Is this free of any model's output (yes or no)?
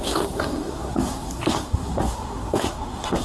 no